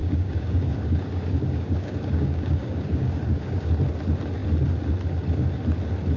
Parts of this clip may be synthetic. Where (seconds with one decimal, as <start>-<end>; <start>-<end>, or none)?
0.0-3.7